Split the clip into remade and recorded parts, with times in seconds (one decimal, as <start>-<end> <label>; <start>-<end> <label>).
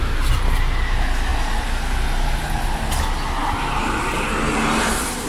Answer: 0.0-5.3 recorded